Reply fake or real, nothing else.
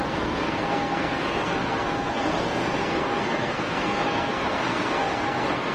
fake